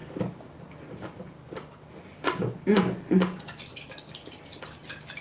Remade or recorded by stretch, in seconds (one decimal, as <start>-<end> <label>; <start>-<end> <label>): 0.0-5.2 recorded